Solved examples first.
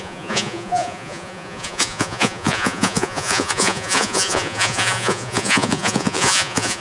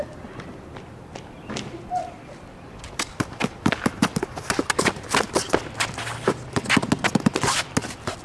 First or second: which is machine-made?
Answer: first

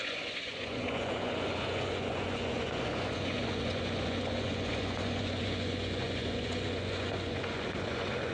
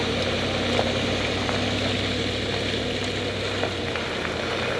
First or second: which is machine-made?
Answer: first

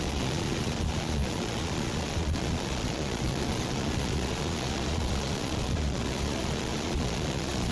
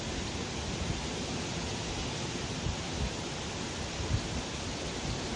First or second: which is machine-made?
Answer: first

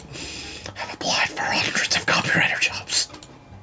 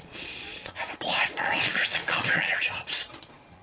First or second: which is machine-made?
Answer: second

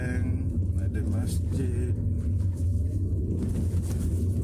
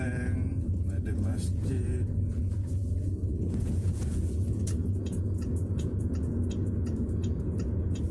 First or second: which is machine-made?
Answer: second